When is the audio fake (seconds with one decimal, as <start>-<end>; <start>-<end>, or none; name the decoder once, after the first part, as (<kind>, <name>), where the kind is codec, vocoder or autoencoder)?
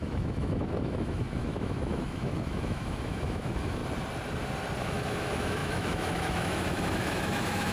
0.0-3.8 (autoencoder, DAC-VAE); 4.8-7.7